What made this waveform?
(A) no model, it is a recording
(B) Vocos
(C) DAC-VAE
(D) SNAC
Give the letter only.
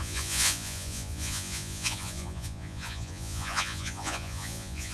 B